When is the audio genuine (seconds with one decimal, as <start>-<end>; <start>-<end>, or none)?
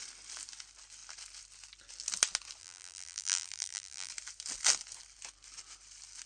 0.0-2.6; 4.1-6.3